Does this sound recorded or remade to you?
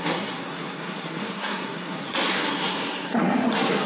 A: remade